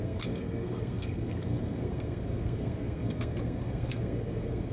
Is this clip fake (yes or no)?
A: yes